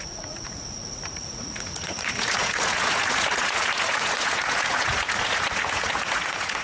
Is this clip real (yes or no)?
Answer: no